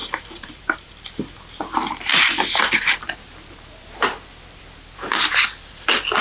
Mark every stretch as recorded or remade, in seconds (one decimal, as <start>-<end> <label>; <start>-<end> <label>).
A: 0.0-0.9 remade; 0.9-6.2 recorded